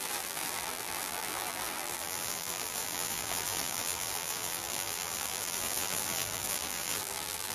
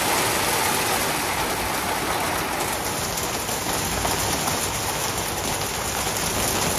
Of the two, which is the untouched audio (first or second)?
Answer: second